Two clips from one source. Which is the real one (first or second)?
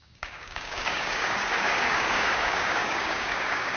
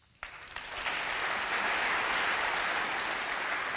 second